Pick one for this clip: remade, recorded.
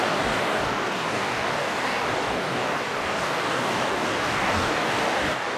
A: remade